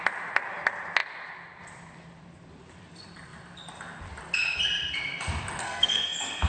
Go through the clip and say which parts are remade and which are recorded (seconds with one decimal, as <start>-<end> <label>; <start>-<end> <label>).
0.0-5.6 recorded; 5.6-6.5 remade